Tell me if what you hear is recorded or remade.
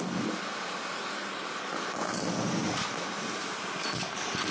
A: recorded